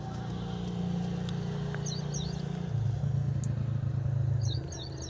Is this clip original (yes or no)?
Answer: yes